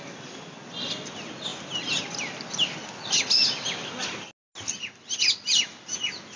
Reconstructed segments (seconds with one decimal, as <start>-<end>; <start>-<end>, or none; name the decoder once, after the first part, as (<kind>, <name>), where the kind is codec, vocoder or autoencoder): none